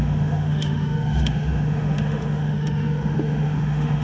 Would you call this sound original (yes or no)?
no